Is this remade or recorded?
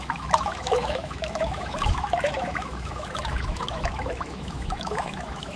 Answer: remade